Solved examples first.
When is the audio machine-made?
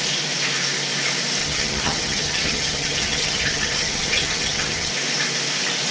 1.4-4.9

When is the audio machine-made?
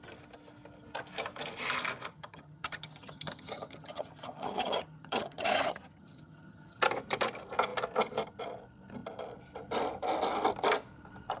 2.1-6.8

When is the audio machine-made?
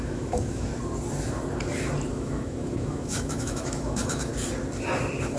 0.0-0.7; 2.1-4.3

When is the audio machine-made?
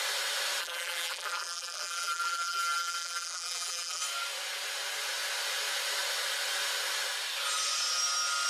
0.6-4.0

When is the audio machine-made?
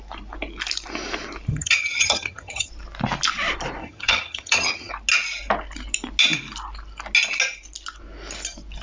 1.5-2.7; 3.8-4.9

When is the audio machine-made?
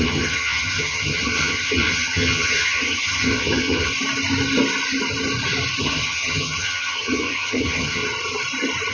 0.0-3.9; 5.8-8.0